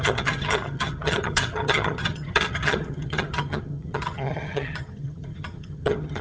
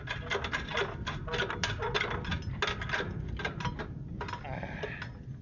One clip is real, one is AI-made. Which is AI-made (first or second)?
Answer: first